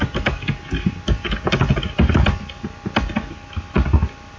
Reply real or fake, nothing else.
real